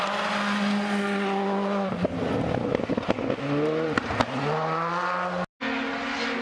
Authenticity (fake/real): real